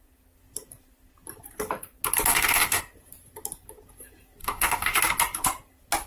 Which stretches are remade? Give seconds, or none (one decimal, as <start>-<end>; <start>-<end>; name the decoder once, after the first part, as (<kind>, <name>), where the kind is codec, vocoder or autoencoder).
2.3-2.8 (codec, DAC); 4.4-5.0